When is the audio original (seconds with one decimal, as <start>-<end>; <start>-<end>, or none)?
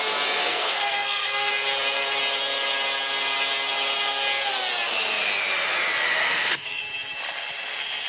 0.0-0.4; 1.5-6.2; 6.8-8.1